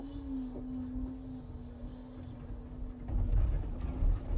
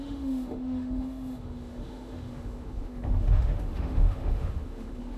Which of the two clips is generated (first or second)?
second